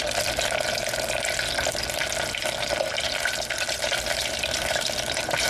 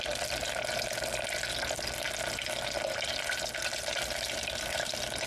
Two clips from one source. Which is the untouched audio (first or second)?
second